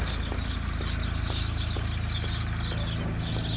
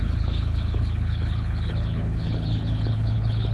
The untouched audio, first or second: first